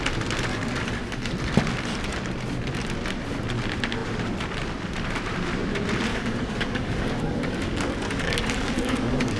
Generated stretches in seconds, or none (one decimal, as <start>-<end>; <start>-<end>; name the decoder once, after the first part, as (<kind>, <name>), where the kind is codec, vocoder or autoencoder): 0.5-1.3 (codec, DAC); 6.1-9.4